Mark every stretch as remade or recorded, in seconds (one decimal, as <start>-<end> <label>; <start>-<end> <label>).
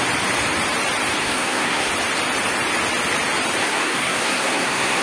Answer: 0.0-1.2 recorded; 1.2-1.9 remade; 1.9-3.6 recorded; 3.6-5.0 remade